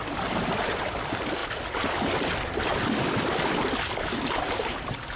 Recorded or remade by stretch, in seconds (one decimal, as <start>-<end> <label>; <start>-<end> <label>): 0.0-5.2 remade